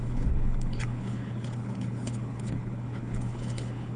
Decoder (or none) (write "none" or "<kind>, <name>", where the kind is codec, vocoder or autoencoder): codec, HILCodec